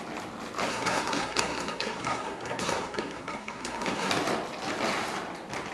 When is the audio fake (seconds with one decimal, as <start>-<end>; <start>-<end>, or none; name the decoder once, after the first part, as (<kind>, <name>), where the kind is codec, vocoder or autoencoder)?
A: 0.7-4.1 (codec, SNAC)

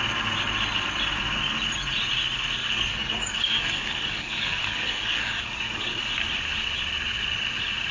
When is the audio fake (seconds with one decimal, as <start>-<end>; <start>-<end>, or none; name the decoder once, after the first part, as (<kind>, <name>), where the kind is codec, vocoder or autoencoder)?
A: 2.6-6.0 (codec, DAC)

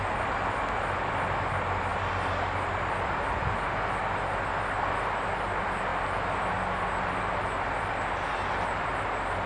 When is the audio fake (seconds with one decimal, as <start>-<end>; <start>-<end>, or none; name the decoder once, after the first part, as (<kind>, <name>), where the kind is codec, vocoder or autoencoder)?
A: none

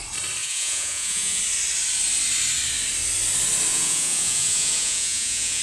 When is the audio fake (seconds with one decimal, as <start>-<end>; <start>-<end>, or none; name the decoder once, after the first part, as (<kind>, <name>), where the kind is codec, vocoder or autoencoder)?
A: 0.4-1.4 (vocoder, Vocos); 3.7-5.6

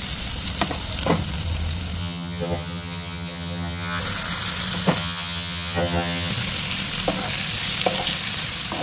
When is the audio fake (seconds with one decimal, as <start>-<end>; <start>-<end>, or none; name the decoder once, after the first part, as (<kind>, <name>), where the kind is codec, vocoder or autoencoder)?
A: 2.0-4.0 (vocoder, HiFi-GAN); 5.0-6.3

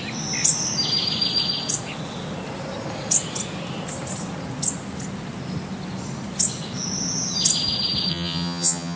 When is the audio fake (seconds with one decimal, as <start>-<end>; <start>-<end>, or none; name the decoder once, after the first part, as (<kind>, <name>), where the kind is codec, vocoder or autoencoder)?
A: 8.1-9.0 (vocoder, HiFi-GAN)

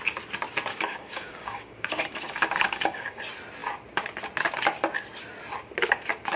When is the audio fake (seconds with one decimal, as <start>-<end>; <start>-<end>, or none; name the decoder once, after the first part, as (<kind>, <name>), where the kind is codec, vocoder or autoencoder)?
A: 0.7-3.2 (codec, DAC)

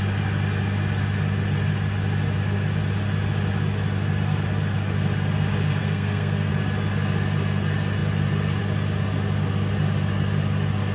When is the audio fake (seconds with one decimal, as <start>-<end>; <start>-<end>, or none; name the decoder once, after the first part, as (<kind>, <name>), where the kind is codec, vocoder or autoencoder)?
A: 5.8-6.5 (codec, SNAC)